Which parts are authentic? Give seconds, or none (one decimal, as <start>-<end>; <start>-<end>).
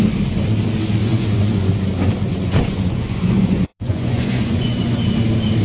0.0-1.0; 1.7-2.3; 5.0-5.6